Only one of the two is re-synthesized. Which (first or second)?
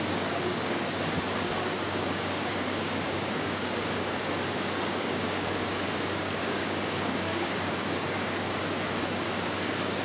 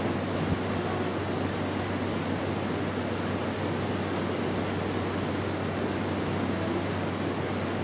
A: first